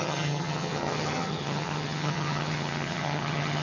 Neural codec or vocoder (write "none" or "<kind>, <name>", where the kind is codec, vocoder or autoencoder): vocoder, HiFi-GAN